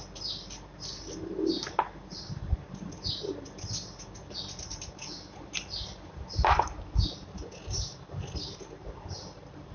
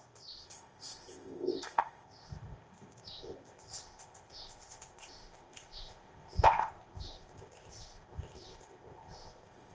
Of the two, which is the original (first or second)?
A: first